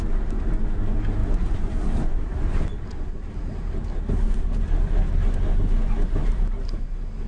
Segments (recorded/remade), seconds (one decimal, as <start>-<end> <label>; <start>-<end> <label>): 0.0-6.2 recorded; 6.2-6.8 remade; 6.8-7.3 recorded